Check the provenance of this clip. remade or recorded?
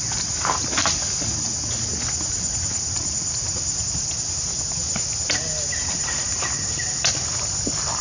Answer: recorded